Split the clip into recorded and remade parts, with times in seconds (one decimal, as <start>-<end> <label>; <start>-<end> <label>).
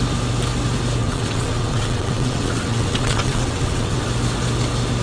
0.0-1.0 recorded; 1.0-4.0 remade; 4.0-5.0 recorded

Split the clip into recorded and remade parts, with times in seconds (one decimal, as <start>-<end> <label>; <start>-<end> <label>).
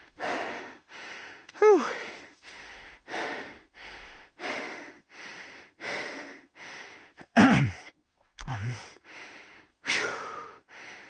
0.0-11.1 remade